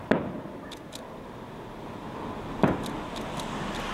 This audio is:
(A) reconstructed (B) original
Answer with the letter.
B